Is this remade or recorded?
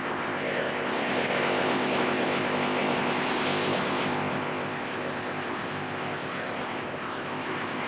remade